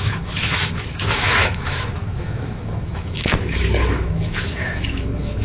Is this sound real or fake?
fake